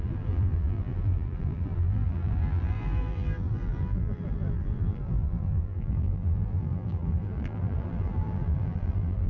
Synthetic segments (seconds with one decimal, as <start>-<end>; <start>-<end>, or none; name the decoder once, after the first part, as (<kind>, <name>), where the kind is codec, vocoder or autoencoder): 0.0-9.3 (vocoder, BigVGAN v2)